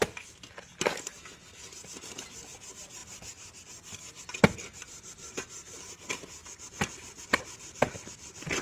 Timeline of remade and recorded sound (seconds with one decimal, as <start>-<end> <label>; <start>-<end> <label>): 0.0-8.6 recorded